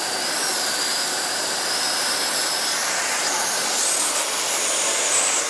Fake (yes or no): no